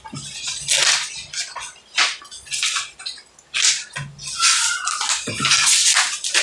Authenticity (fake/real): real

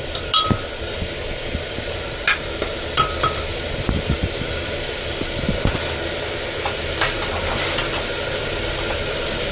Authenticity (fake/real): real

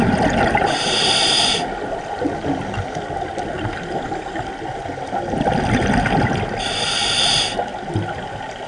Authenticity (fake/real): real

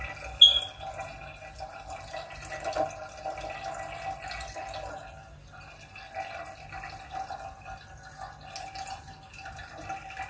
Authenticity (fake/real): real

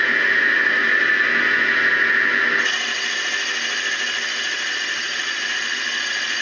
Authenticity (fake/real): real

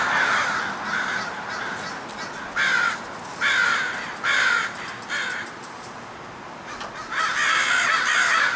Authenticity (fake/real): real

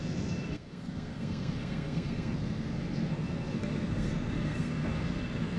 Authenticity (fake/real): fake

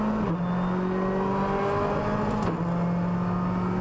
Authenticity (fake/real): real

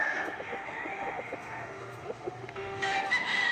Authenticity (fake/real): fake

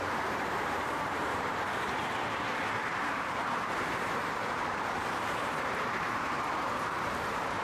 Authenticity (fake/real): fake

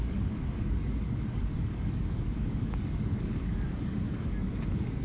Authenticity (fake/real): fake